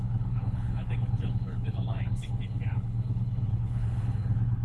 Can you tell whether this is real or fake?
fake